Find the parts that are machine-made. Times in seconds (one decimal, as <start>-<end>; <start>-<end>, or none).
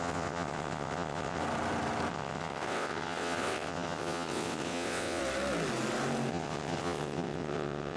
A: 0.0-1.4; 2.1-5.2; 6.3-8.0